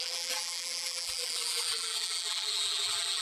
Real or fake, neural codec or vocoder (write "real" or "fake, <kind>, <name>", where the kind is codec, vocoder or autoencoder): fake, vocoder, BigVGAN v2